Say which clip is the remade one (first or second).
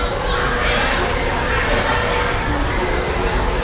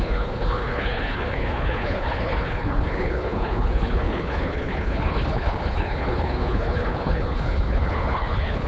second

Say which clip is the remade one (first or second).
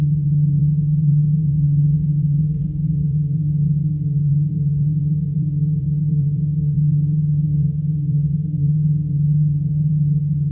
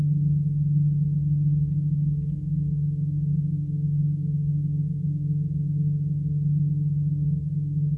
first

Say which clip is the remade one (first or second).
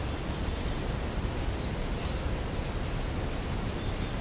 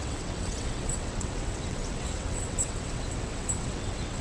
second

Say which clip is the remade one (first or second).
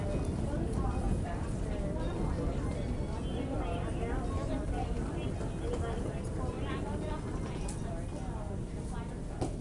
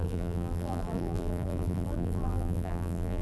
second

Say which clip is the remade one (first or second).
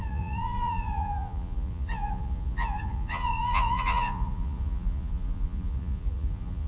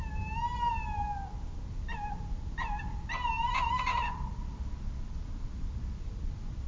first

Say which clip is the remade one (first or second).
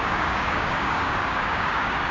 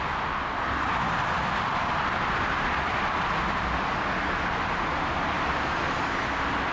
first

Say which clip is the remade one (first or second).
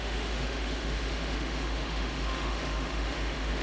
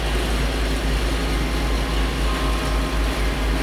first